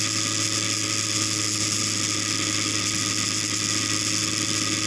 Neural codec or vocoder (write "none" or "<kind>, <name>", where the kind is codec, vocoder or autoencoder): none